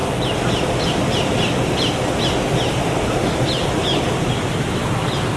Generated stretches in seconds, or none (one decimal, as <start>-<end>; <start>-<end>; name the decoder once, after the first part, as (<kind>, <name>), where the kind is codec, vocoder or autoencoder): none